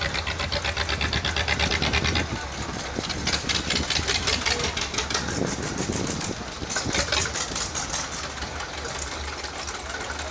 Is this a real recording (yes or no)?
yes